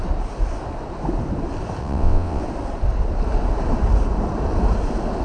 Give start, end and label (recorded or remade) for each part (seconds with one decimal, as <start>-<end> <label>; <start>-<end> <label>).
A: 0.0-1.8 recorded; 1.8-2.4 remade; 2.4-5.2 recorded